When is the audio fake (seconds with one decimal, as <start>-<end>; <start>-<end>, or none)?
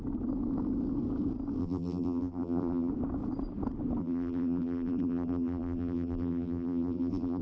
1.6-2.9; 4.0-7.4